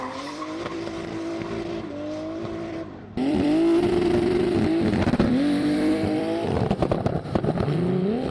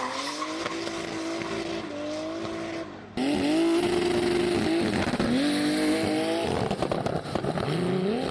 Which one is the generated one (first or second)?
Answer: first